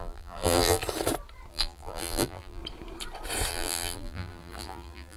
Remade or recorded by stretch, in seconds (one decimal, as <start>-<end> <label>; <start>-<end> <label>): 0.0-0.8 remade; 0.8-1.5 recorded; 1.5-2.6 remade; 2.6-3.5 recorded; 3.5-5.2 remade